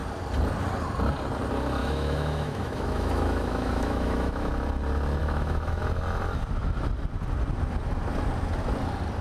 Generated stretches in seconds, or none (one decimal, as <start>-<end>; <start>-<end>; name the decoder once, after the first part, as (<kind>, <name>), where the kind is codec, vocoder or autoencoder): 1.8-4.5 (autoencoder, DAC-VAE); 5.2-5.8